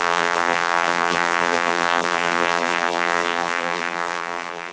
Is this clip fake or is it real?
fake